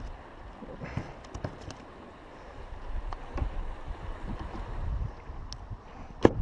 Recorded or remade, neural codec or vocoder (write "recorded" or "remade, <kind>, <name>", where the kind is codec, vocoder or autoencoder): recorded